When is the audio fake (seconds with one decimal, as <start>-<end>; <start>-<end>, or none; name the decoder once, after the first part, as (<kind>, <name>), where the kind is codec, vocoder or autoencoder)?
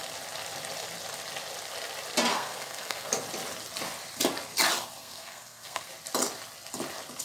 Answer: 2.3-3.1 (codec, SNAC); 5.0-5.9